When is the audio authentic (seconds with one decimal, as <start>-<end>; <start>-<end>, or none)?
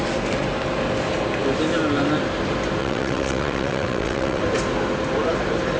0.0-2.8; 4.4-5.8